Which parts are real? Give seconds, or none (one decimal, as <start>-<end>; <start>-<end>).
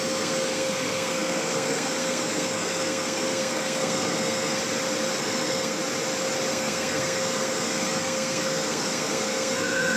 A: 4.6-5.2; 5.8-6.5